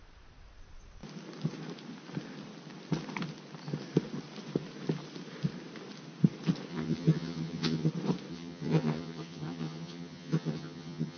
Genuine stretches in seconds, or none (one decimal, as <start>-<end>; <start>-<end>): 0.0-6.7; 7.9-8.3